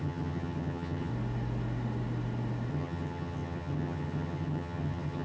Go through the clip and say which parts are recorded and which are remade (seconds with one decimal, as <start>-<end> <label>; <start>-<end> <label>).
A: 0.0-1.1 remade; 1.1-2.7 recorded; 2.7-5.2 remade